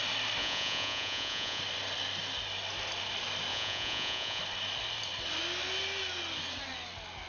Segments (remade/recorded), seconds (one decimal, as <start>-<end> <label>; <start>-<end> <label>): 0.0-0.4 recorded; 0.4-1.6 remade; 1.6-3.5 recorded; 3.5-4.4 remade; 4.4-7.3 recorded